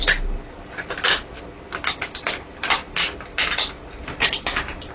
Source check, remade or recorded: recorded